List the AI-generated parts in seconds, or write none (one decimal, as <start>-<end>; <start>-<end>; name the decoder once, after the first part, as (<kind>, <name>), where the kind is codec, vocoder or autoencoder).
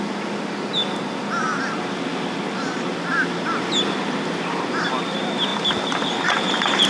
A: none